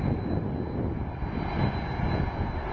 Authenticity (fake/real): real